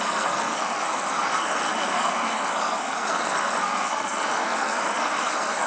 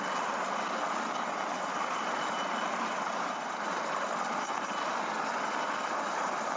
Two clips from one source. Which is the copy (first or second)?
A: first